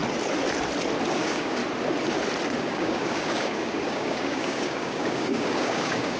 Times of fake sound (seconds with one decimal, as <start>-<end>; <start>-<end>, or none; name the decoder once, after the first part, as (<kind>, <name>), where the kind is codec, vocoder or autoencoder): 1.1-1.6 (codec, DAC); 2.6-6.2